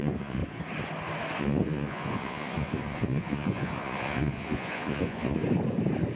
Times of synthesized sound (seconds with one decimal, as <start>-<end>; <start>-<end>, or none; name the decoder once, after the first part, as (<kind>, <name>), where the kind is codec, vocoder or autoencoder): 0.0-0.4 (vocoder, Vocos); 1.4-5.4